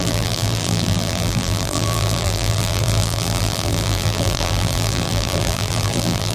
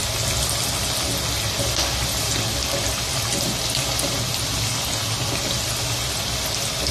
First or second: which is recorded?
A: second